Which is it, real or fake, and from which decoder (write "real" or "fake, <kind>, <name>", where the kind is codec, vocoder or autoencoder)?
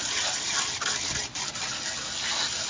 real